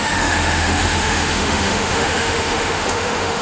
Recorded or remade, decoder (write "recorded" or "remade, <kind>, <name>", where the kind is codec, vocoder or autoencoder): remade, autoencoder, DAC-VAE